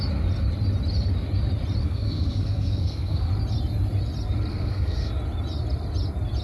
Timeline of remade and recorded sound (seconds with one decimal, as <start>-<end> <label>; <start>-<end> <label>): 0.0-1.8 recorded; 1.8-3.3 remade; 3.3-4.5 recorded; 4.5-5.1 remade; 5.1-6.4 recorded